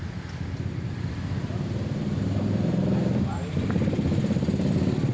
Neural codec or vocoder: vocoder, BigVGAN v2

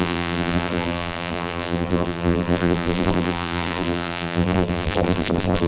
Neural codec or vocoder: vocoder, BigVGAN v2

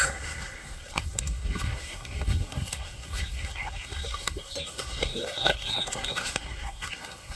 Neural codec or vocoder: codec, SNAC